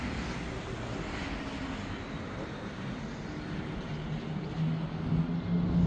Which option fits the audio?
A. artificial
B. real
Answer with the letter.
B